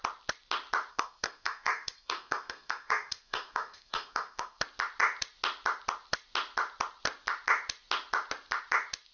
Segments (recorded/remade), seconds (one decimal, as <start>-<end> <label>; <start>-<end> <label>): 0.0-0.9 recorded; 0.9-4.6 remade; 4.6-9.1 recorded